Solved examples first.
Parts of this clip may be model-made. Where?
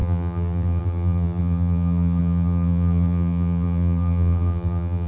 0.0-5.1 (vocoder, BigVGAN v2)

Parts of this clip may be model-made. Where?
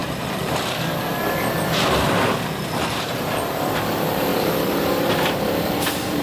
2.9-6.2 (vocoder, BigVGAN v2)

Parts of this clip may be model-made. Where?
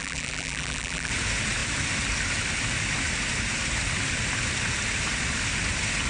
0.0-1.1 (vocoder, BigVGAN v2)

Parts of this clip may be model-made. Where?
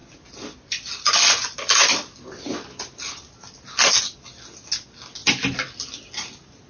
none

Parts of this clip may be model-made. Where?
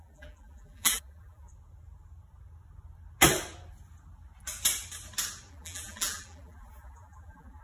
0.0-1.5 (vocoder, BigVGAN v2); 5.5-7.6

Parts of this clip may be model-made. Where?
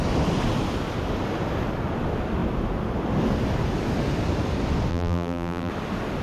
4.9-5.7 (vocoder, BigVGAN v2)